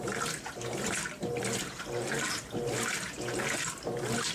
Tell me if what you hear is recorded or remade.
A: recorded